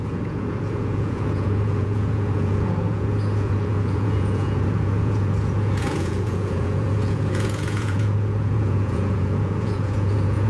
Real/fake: fake